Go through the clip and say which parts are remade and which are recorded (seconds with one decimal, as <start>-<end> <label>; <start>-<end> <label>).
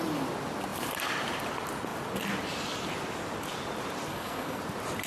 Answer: 0.0-4.1 recorded; 4.1-4.6 remade; 4.6-5.1 recorded